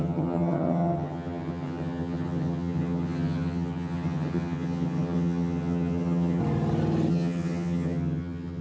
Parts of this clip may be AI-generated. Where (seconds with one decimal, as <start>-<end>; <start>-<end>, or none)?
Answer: 0.0-6.4; 7.1-8.6